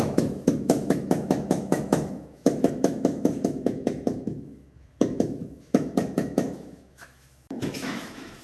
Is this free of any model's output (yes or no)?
no